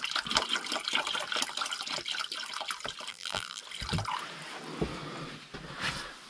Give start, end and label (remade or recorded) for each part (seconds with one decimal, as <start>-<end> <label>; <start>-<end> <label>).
0.0-3.1 recorded; 3.1-3.6 remade; 3.6-6.3 recorded